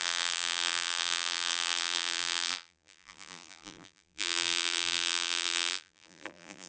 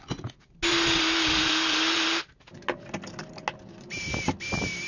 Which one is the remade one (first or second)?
first